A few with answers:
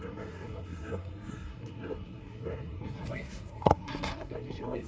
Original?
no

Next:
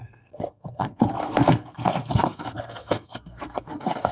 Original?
no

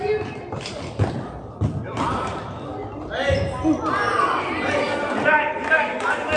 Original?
yes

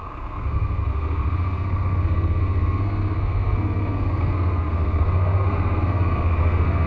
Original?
no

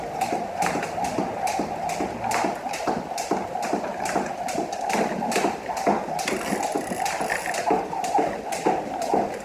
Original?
yes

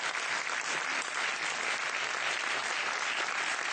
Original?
yes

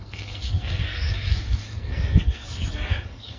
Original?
no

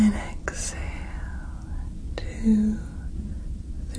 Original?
yes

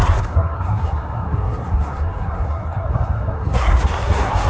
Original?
no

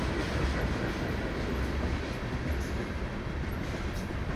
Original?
yes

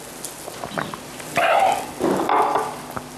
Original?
yes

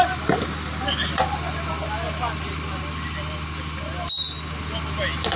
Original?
yes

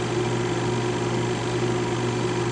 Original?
yes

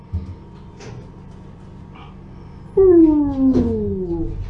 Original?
yes